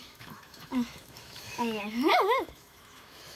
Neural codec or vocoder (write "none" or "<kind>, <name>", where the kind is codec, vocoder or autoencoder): autoencoder, DAC-VAE